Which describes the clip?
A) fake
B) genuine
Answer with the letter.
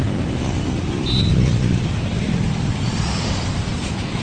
B